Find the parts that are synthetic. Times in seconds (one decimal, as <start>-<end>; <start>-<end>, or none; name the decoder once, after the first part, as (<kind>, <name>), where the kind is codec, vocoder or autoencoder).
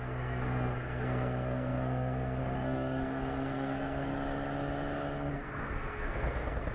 0.0-4.1 (codec, SNAC); 5.3-6.7